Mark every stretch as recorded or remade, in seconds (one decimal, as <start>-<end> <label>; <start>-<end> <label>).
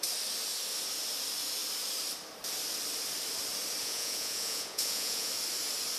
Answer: 0.0-3.8 recorded; 3.8-5.3 remade; 5.3-6.0 recorded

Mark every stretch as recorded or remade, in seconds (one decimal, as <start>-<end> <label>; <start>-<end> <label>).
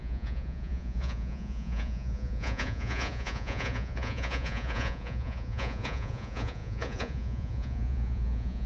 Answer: 0.0-8.7 remade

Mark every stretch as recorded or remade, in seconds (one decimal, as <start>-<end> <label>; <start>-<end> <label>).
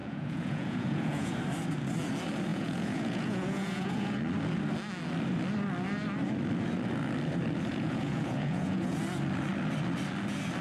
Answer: 0.0-1.4 remade; 1.4-2.5 recorded; 2.5-4.2 remade; 4.2-7.7 recorded; 7.7-9.0 remade; 9.0-10.6 recorded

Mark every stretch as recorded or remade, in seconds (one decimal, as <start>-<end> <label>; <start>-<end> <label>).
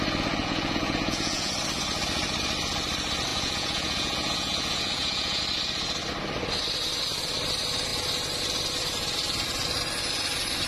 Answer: 0.0-0.4 recorded; 0.4-1.5 remade; 1.5-3.3 recorded; 3.3-5.4 remade; 5.4-10.7 recorded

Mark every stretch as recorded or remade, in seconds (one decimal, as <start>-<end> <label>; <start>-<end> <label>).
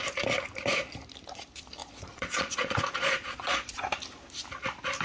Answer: 0.0-1.8 recorded; 1.8-3.8 remade; 3.8-5.0 recorded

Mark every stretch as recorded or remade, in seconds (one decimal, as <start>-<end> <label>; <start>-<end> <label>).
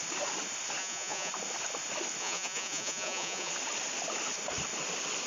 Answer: 0.0-0.8 recorded; 0.8-1.3 remade; 1.3-2.2 recorded; 2.2-3.5 remade; 3.5-5.3 recorded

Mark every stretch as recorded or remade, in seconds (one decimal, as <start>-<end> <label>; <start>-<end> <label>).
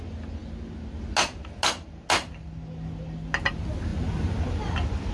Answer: 0.0-5.1 recorded